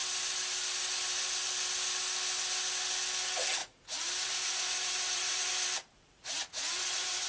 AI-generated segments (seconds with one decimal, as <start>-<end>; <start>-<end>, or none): 3.6-5.5; 5.9-7.3

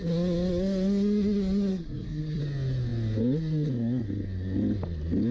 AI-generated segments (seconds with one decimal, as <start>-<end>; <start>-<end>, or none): 1.7-2.4